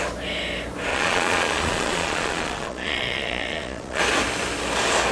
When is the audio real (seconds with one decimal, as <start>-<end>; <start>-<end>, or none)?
0.0-0.9; 4.0-5.1